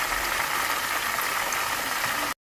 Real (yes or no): yes